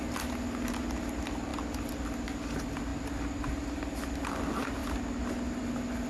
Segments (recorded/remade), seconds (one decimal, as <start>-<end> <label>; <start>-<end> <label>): 0.0-6.1 recorded